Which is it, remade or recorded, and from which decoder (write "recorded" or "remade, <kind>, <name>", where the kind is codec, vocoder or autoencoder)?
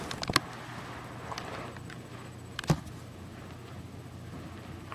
recorded